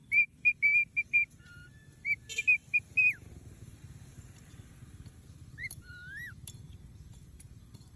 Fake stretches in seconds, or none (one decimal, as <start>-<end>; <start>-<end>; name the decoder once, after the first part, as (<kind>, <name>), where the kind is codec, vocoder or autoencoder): 0.9-1.6 (vocoder, BigVGAN v2); 3.3-8.0